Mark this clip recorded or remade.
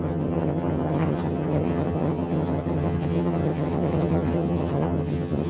remade